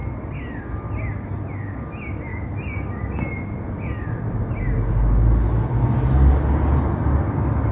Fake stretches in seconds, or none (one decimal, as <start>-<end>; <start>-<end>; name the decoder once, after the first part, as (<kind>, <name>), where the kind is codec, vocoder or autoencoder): none